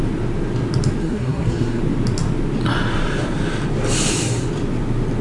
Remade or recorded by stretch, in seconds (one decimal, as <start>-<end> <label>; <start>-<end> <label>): 0.0-1.0 recorded; 1.0-1.8 remade; 1.8-5.2 recorded